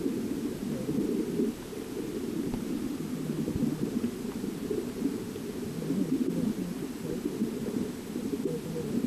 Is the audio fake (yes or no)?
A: no